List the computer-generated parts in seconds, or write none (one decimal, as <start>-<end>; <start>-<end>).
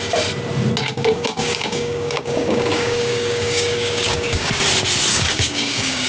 0.8-4.5; 5.1-6.1